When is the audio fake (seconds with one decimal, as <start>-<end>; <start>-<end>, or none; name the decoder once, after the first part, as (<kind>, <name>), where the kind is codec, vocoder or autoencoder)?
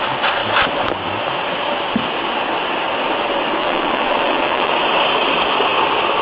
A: 3.6-4.7 (vocoder, WaveNeXt)